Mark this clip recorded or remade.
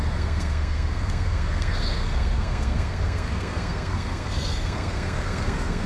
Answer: remade